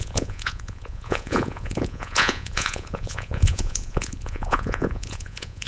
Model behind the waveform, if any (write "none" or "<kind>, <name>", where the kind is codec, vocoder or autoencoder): vocoder, Vocos